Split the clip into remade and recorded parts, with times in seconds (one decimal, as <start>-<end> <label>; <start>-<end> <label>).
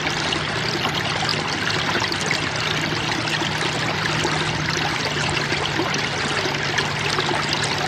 0.0-1.3 recorded; 1.3-6.0 remade; 6.0-7.9 recorded